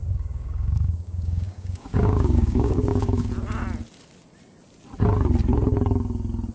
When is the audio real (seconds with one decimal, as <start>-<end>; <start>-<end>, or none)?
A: 3.3-6.5